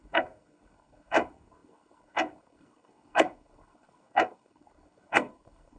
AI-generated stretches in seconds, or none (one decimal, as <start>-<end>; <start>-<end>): 0.0-5.8